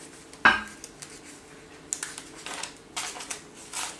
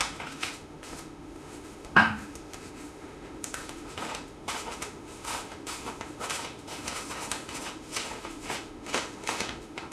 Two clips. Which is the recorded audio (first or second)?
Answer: first